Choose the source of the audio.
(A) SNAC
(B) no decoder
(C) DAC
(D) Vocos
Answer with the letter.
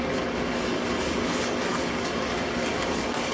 C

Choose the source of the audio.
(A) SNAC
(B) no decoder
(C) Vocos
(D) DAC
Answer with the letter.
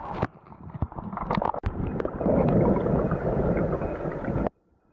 B